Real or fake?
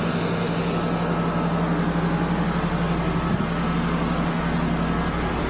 real